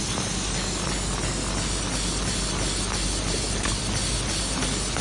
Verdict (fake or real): real